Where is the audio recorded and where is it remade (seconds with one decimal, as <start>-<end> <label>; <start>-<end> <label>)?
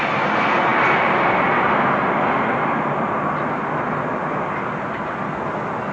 0.0-5.9 recorded